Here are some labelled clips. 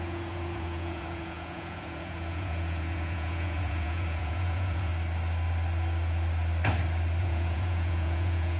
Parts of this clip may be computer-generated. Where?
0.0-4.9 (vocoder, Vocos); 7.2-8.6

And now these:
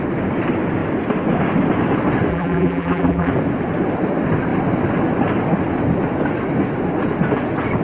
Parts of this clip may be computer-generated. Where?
2.3-3.3 (vocoder, BigVGAN v2)

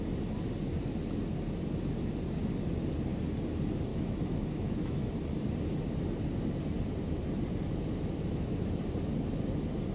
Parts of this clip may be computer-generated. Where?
3.9-5.1 (autoencoder, DAC-VAE)

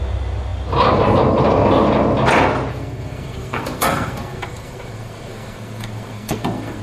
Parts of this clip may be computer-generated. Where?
2.7-6.8 (codec, SNAC)